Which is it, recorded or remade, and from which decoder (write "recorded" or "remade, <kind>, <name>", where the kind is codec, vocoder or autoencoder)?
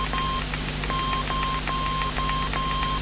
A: recorded